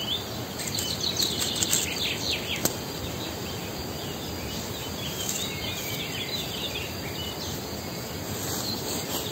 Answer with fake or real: real